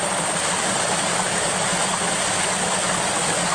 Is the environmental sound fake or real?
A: real